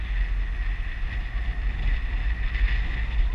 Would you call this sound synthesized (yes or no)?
no